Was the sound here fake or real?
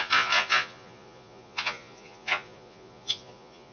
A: fake